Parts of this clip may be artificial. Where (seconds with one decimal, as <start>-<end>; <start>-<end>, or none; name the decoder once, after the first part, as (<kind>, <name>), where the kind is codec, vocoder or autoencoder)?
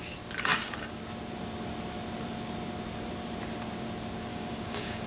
4.3-5.1 (codec, DAC)